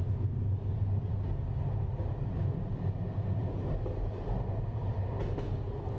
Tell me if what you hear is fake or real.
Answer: real